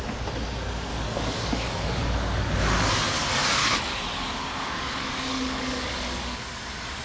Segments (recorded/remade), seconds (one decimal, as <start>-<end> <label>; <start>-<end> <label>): 0.0-0.9 recorded; 0.9-2.9 remade; 2.9-3.4 recorded; 3.4-7.0 remade